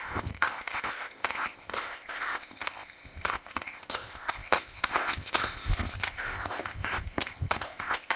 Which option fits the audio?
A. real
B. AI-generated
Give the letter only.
B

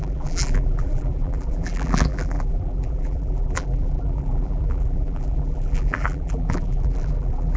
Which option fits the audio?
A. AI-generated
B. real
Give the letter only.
A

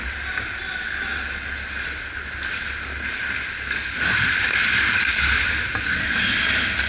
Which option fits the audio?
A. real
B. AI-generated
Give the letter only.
A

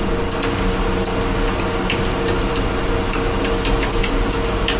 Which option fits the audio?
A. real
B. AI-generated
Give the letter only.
A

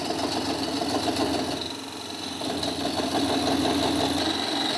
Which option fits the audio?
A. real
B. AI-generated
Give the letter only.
A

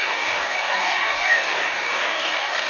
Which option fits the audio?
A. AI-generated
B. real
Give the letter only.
A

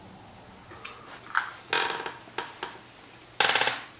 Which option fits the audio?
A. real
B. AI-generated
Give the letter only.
A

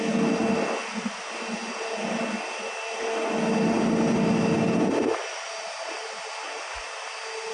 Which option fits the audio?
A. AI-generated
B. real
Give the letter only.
B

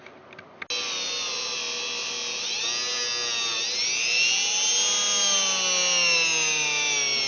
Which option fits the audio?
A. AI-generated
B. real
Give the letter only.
B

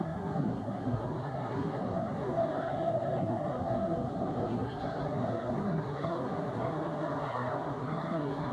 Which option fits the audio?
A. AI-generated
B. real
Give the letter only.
A